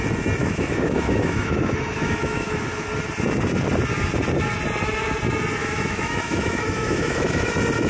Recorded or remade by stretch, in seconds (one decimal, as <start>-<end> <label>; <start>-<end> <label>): 0.0-0.4 recorded; 0.4-2.6 remade; 2.6-5.6 recorded; 5.6-7.5 remade; 7.5-7.9 recorded

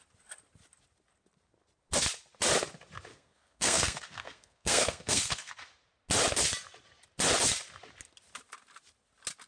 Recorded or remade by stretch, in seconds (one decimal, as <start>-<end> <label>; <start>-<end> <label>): 0.0-3.1 recorded; 3.1-5.5 remade; 5.5-9.5 recorded

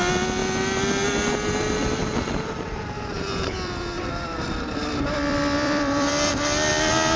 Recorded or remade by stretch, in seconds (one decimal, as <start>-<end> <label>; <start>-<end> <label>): 0.0-2.0 recorded; 2.0-6.3 remade; 6.3-7.2 recorded